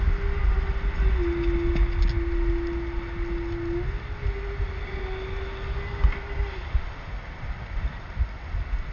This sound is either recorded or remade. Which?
recorded